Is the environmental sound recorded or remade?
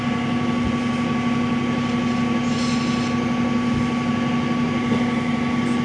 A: recorded